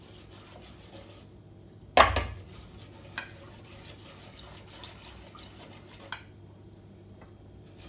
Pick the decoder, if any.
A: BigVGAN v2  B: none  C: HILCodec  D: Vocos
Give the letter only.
B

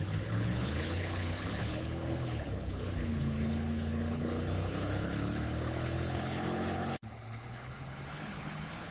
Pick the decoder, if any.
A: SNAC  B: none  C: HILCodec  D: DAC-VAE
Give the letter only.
C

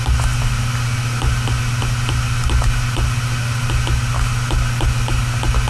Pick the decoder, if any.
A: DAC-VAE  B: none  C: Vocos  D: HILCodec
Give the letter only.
B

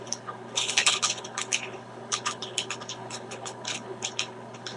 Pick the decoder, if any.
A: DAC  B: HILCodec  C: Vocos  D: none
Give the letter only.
B